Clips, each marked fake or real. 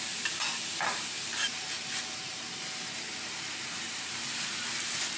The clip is real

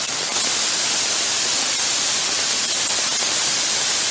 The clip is real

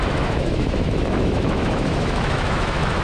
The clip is fake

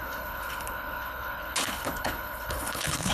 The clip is fake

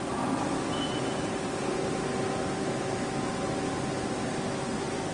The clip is real